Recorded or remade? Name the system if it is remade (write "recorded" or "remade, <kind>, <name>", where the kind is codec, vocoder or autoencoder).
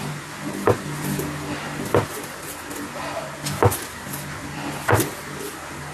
recorded